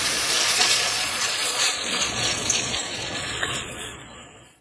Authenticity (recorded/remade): remade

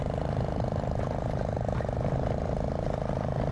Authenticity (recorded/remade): recorded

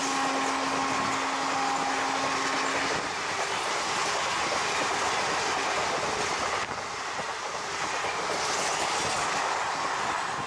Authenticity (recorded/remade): recorded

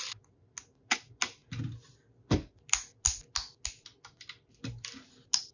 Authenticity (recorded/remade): recorded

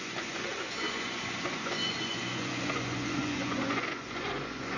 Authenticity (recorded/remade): remade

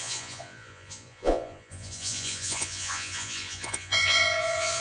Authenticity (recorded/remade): remade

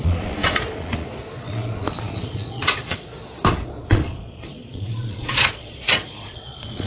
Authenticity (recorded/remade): remade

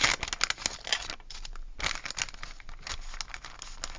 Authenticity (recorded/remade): recorded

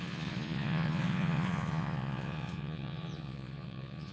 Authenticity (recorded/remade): remade